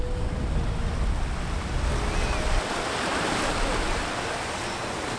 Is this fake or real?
real